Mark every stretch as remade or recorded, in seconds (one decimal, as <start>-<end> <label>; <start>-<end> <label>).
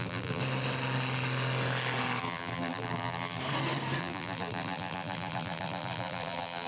0.0-0.4 remade; 0.4-2.2 recorded; 2.2-3.4 remade; 3.4-4.0 recorded; 4.0-6.7 remade